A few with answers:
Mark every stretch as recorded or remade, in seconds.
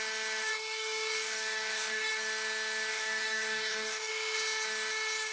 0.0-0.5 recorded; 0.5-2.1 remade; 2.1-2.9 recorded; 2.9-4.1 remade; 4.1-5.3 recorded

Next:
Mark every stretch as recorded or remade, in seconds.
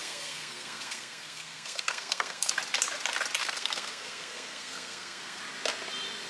0.0-2.5 remade; 2.5-3.4 recorded; 3.4-5.4 remade; 5.4-6.3 recorded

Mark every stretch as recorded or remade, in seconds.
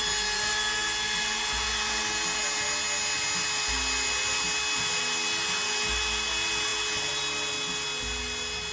0.0-8.7 recorded